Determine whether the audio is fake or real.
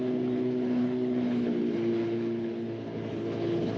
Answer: fake